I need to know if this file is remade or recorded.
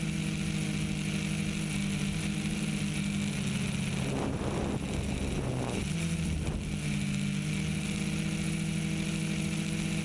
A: recorded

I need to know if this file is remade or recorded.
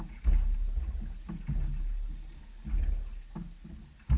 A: recorded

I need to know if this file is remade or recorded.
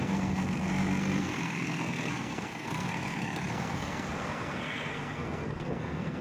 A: remade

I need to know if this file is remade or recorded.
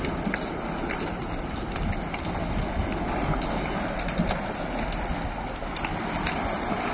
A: recorded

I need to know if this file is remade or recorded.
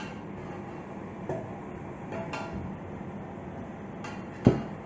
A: recorded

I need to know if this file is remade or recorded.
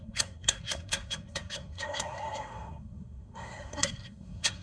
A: remade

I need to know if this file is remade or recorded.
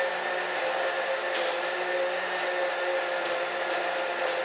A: recorded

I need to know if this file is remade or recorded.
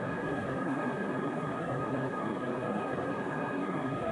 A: remade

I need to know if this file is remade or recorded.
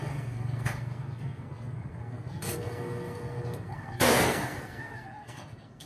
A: remade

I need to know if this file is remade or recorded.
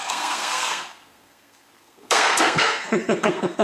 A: remade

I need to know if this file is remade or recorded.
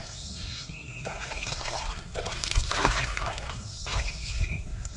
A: remade